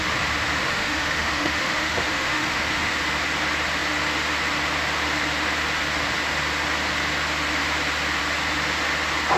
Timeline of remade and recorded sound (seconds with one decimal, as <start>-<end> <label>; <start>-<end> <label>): 0.0-0.6 recorded; 0.6-2.9 remade; 2.9-9.4 recorded